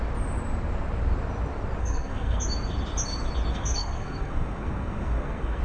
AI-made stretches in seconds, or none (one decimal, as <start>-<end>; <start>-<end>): 1.8-2.4; 3.5-5.6

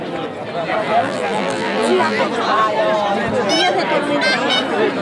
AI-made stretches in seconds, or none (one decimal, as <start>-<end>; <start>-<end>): 1.0-2.2

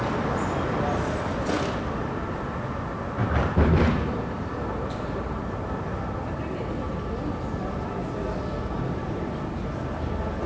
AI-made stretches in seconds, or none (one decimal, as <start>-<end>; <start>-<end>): 3.2-6.4

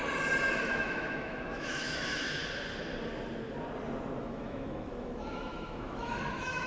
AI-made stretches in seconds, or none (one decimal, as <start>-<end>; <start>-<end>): 0.6-2.4; 4.2-6.7